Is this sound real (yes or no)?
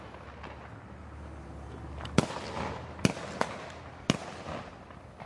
yes